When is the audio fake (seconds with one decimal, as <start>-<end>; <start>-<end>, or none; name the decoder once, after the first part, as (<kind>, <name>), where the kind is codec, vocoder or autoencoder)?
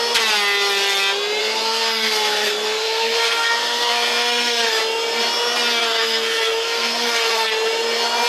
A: 1.4-4.8 (codec, SNAC); 5.8-7.5